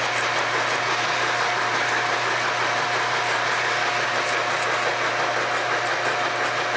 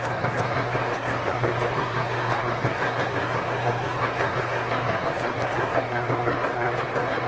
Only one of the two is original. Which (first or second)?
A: first